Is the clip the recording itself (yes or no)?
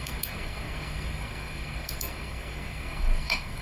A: no